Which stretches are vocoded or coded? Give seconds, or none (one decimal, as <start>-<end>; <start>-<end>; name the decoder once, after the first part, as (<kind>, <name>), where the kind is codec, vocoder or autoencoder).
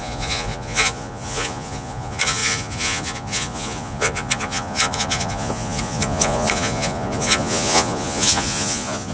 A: 0.0-9.1 (vocoder, Vocos)